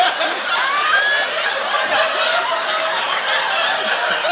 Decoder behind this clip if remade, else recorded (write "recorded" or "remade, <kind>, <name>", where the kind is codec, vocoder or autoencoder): recorded